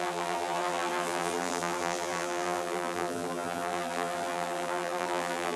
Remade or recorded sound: remade